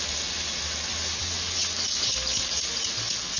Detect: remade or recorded recorded